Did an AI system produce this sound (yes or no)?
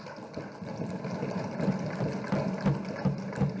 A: yes